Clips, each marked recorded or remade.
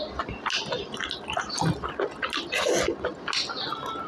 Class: recorded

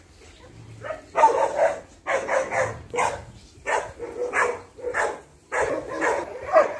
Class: recorded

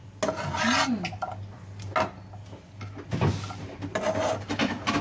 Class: recorded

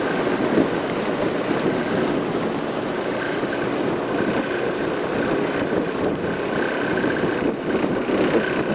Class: recorded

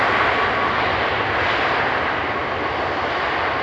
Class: recorded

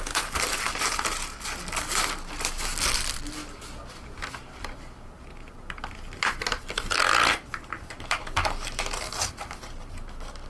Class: recorded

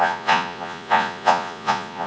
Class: remade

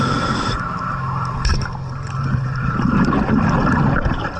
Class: remade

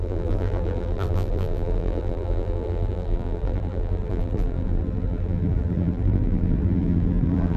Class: remade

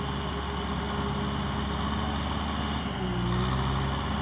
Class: recorded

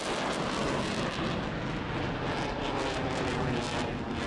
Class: recorded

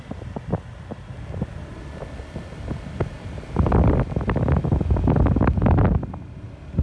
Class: recorded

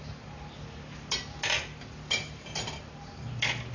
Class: recorded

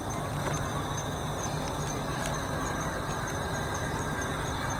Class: recorded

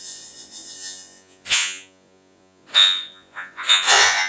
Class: remade